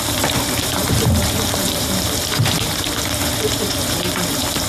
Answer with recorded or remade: remade